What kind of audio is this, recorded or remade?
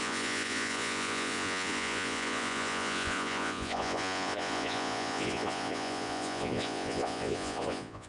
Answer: remade